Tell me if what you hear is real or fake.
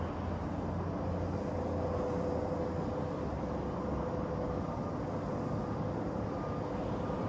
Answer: real